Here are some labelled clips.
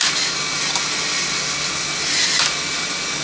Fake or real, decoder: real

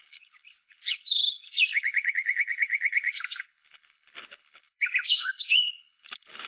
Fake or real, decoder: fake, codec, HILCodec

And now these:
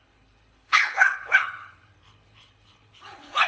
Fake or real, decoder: fake, codec, HILCodec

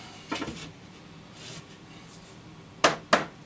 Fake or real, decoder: real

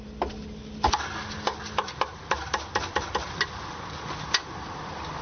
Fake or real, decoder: real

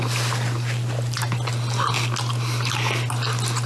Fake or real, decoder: real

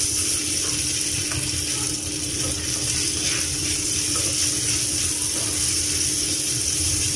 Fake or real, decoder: real